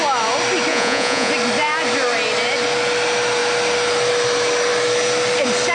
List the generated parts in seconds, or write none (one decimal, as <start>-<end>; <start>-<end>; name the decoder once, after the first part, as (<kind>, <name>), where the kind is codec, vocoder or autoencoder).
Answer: 0.7-1.3 (vocoder, Vocos)